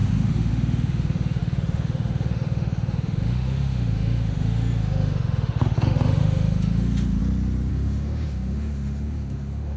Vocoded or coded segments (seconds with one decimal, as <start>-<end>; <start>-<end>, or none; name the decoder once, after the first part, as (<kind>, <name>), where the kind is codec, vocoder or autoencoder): 0.0-7.2 (autoencoder, DAC-VAE); 7.7-9.8